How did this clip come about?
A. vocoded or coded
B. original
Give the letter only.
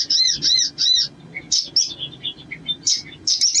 B